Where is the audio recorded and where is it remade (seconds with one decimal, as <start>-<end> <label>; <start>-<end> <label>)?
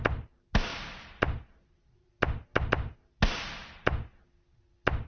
0.0-5.1 recorded